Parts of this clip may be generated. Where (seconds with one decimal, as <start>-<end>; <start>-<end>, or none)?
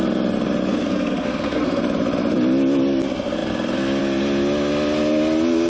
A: 0.7-1.8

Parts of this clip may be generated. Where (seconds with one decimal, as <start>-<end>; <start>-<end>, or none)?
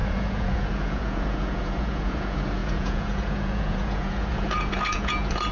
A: 0.0-5.5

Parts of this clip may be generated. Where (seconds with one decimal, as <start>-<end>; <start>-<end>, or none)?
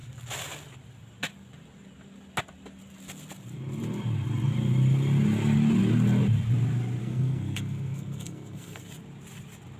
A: 7.0-8.8